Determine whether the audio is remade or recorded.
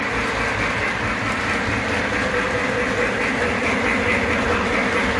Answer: recorded